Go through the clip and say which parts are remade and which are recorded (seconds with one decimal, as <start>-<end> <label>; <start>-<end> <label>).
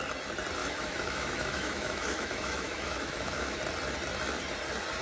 0.0-0.6 recorded; 0.6-3.6 remade; 3.6-5.0 recorded